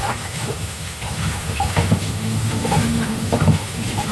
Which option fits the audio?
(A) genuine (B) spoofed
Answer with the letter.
B